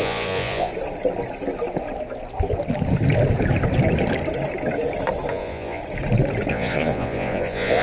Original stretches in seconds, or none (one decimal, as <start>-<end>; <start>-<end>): 0.7-5.3; 5.8-6.5